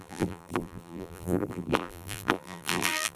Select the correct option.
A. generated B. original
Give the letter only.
A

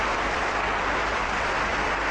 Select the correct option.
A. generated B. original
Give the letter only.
A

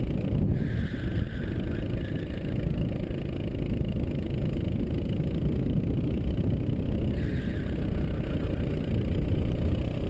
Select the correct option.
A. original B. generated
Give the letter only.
A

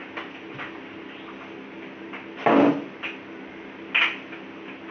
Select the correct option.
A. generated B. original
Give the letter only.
B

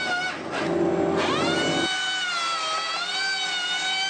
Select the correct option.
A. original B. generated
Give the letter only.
A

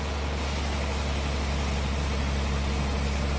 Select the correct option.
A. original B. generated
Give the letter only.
A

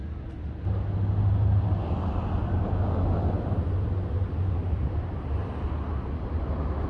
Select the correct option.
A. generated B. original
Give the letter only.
B